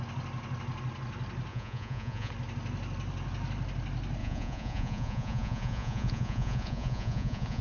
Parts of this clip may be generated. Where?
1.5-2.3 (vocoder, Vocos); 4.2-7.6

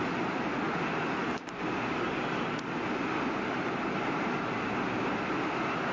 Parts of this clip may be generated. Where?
none

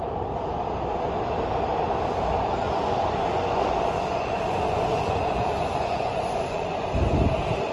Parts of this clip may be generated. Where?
2.6-7.0 (vocoder, Vocos)

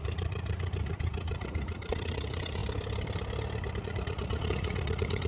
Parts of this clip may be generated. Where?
0.0-2.6 (vocoder, Vocos); 3.8-5.3